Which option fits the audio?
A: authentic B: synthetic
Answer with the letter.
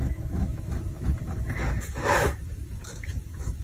B